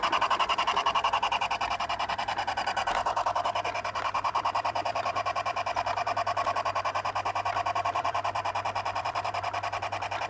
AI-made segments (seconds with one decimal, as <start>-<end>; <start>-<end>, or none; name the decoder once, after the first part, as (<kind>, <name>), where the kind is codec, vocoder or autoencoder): 0.0-2.8 (vocoder, BigVGAN v2); 4.0-10.3